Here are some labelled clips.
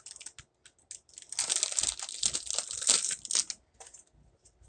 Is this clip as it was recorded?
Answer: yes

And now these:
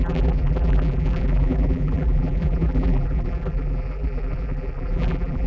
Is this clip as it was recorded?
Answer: no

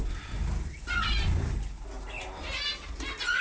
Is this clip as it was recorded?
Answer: yes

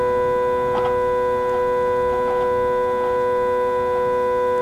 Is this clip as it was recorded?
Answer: yes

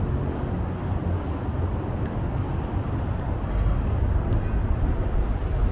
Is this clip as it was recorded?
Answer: yes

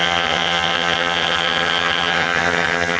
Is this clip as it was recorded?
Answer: no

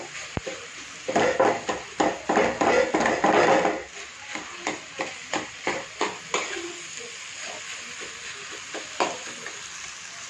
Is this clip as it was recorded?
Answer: yes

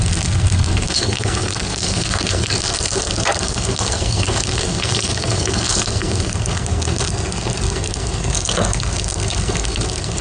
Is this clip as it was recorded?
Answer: no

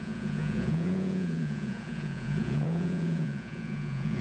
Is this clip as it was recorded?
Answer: no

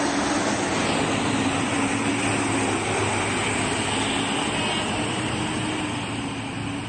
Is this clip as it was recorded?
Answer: yes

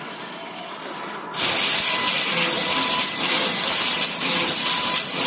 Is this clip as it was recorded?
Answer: no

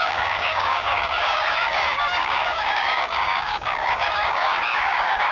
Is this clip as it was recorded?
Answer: no